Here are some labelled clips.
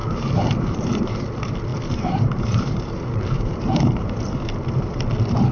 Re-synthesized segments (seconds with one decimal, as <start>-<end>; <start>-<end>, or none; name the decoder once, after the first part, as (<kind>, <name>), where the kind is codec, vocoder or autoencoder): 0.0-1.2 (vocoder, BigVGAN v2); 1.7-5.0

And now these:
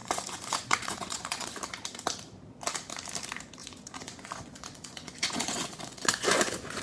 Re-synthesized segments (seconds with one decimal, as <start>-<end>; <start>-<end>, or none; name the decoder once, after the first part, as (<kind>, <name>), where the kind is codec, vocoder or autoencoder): 0.0-1.5 (vocoder, Vocos); 3.6-6.8

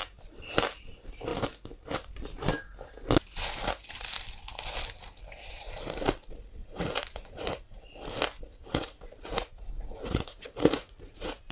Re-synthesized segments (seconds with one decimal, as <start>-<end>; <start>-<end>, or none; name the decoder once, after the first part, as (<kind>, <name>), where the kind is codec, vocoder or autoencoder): 6.6-7.8 (vocoder, Vocos); 8.5-11.5

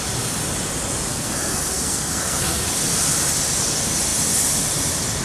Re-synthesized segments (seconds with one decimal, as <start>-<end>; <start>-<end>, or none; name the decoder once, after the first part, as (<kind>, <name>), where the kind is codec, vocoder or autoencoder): 1.1-2.7 (codec, SNAC)

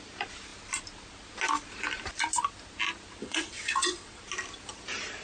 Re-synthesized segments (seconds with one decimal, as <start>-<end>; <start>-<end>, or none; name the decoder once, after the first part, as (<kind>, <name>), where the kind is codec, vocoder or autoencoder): 3.2-4.2 (vocoder, WaveNeXt)

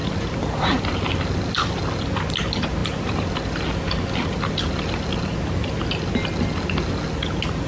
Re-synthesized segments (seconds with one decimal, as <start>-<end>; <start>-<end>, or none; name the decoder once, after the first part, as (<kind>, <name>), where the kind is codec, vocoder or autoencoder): none